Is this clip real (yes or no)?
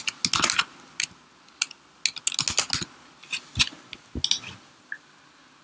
yes